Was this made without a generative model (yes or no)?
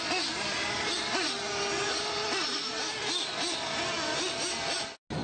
yes